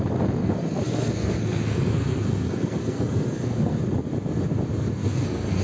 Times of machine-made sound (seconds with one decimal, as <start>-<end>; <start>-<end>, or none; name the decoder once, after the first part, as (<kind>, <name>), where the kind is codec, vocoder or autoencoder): 0.4-3.8 (codec, SNAC); 5.0-5.6